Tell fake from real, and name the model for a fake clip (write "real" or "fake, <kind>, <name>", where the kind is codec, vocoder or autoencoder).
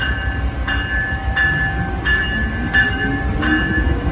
real